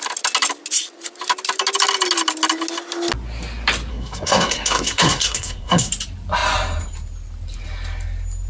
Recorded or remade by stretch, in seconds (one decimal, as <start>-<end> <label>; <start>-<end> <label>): 0.0-3.9 recorded; 3.9-5.9 remade; 5.9-8.5 recorded